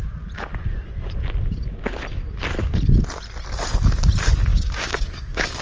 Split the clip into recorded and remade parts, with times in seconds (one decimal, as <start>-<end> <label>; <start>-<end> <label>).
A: 0.0-4.5 recorded; 4.5-5.6 remade